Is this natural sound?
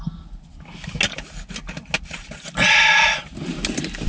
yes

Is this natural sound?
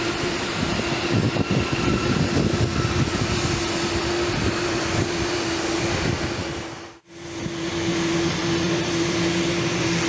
yes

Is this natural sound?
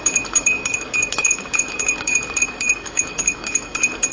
no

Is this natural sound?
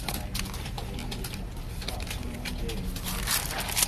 yes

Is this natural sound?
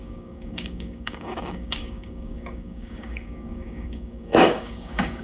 no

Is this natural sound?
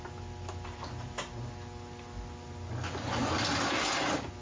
yes